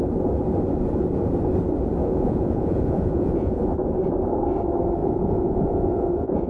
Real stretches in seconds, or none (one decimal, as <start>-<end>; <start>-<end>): 0.0-2.0; 3.7-5.0